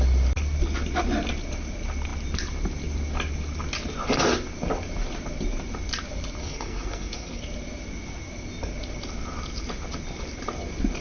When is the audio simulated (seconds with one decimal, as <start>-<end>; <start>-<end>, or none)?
6.4-7.4